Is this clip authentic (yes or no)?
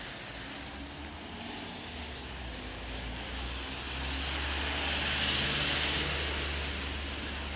yes